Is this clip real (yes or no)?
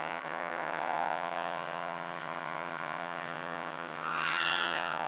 no